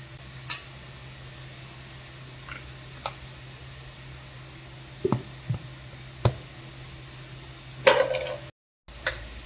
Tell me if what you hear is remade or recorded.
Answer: recorded